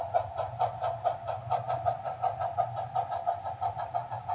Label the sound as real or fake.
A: real